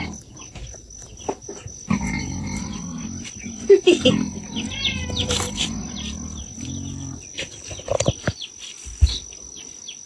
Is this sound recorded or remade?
recorded